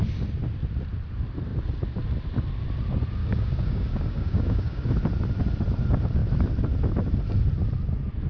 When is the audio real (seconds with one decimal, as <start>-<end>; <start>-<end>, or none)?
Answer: 0.0-3.2; 4.9-8.3